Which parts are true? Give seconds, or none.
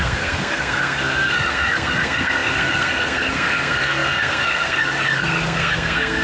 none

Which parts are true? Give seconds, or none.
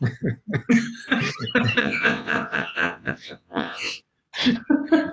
0.0-1.8; 4.0-5.1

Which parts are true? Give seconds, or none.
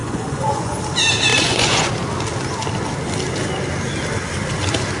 0.8-1.3; 1.9-5.0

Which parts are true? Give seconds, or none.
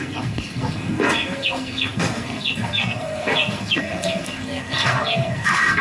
none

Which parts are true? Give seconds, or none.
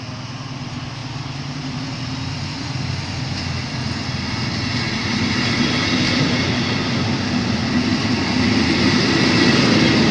0.0-1.0; 1.8-10.1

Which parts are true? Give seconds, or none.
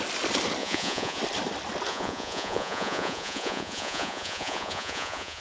0.0-0.6; 1.2-1.9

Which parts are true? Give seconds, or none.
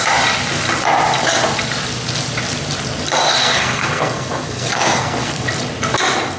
0.0-3.4; 5.5-6.4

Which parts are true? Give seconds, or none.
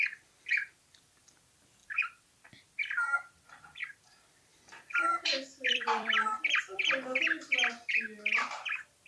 0.0-4.5; 8.2-9.1